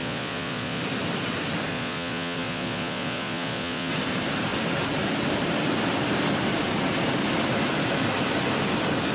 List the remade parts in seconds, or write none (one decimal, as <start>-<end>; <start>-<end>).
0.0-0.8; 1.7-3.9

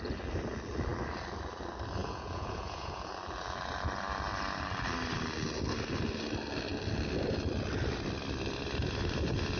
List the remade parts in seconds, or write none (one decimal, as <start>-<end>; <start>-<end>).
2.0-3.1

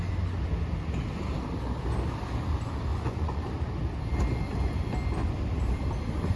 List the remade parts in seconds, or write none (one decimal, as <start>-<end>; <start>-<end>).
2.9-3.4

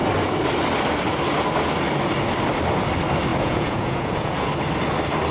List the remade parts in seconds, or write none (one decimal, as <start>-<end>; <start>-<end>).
3.3-4.5

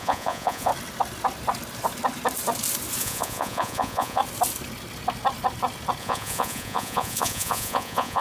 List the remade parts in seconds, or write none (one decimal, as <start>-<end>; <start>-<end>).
0.0-0.7; 3.0-4.2; 6.0-8.2